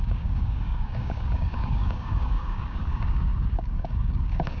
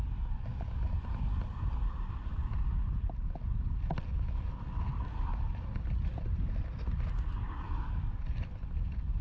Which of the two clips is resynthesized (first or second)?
first